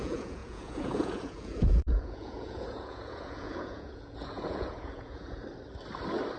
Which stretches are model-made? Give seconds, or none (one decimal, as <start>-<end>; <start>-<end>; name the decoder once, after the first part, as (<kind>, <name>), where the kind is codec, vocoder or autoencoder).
0.0-5.4 (vocoder, Vocos)